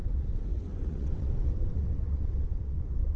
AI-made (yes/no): yes